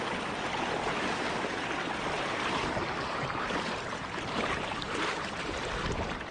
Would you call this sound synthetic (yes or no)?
no